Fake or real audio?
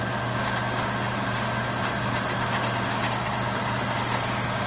real